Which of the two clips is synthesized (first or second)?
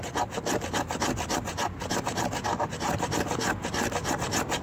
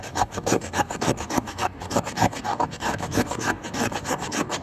second